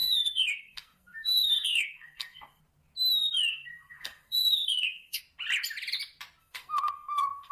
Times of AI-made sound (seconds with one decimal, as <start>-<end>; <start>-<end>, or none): 0.0-2.6; 3.5-5.2; 6.4-7.5